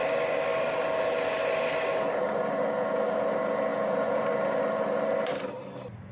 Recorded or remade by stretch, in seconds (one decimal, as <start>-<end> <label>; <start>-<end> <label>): 0.0-3.7 recorded; 3.7-4.3 remade; 4.3-6.1 recorded